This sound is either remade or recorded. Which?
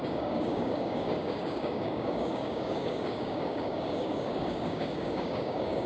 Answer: remade